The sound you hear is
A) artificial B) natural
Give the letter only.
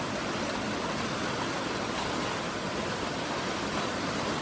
B